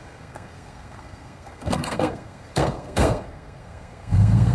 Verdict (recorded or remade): remade